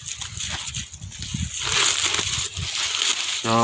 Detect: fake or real real